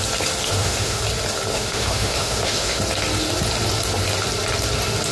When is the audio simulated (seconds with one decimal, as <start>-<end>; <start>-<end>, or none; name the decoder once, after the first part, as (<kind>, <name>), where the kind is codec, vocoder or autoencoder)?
0.4-1.0 (autoencoder, DAC-VAE); 1.5-2.8